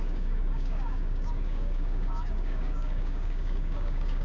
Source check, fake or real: fake